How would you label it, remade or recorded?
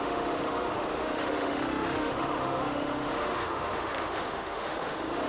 remade